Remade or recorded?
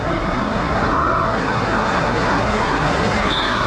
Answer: remade